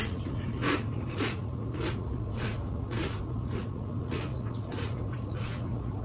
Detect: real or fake fake